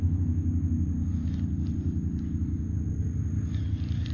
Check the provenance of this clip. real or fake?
real